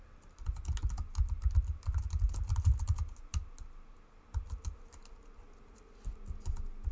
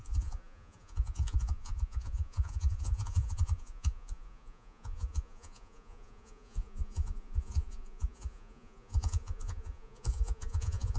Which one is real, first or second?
first